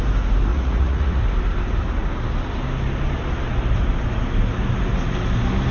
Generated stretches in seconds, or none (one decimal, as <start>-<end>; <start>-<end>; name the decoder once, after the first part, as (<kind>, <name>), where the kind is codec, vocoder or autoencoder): 0.5-1.2 (vocoder, Vocos)